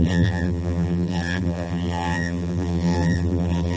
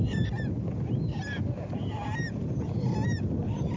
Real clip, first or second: second